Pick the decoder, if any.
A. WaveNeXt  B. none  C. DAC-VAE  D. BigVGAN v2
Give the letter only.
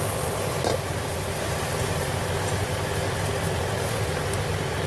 D